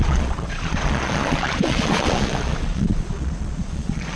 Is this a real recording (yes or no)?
no